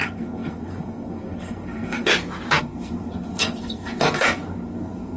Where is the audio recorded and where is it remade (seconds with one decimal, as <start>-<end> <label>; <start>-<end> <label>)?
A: 0.0-2.1 remade; 2.1-2.6 recorded; 2.6-5.2 remade